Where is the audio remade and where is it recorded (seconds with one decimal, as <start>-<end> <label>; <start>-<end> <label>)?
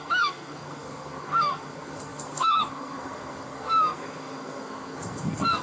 0.0-5.6 remade